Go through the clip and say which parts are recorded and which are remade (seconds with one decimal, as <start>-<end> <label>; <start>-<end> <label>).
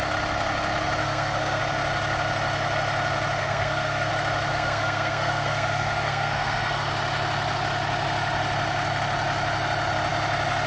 0.0-1.0 recorded; 1.0-1.6 remade; 1.6-3.4 recorded; 3.4-4.1 remade; 4.1-4.5 recorded; 4.5-6.9 remade; 6.9-10.7 recorded